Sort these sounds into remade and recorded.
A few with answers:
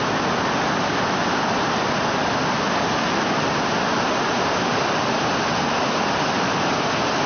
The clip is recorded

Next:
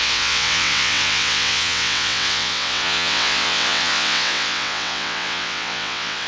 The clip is remade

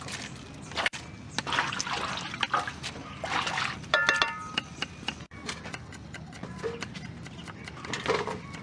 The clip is recorded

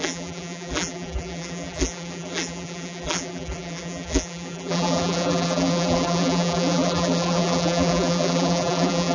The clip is remade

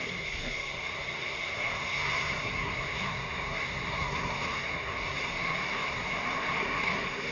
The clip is remade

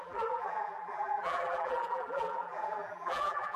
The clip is remade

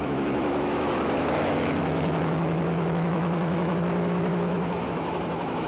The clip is remade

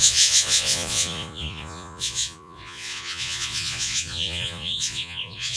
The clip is remade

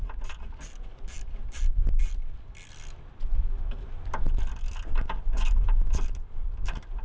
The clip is recorded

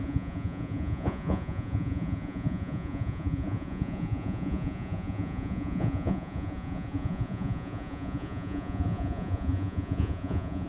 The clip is remade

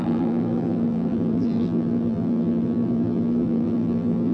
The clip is remade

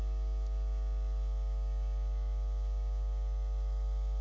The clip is remade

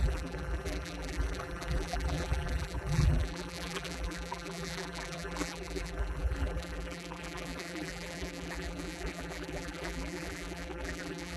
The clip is remade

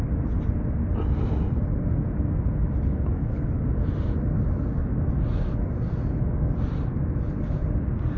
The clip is recorded